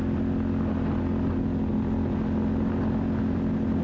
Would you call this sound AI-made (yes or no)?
no